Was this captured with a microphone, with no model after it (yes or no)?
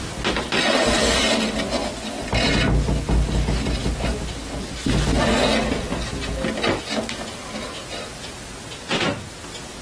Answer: yes